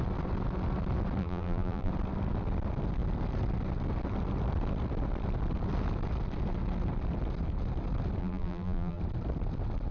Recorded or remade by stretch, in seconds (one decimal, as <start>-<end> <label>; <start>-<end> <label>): 0.0-1.2 recorded; 1.2-1.9 remade; 1.9-8.2 recorded; 8.2-9.0 remade; 9.0-9.9 recorded